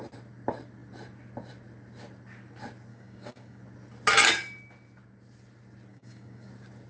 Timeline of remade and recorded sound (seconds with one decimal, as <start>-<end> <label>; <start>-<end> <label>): 0.0-2.9 recorded; 2.9-3.6 remade; 3.6-5.9 recorded; 5.9-6.5 remade; 6.5-6.9 recorded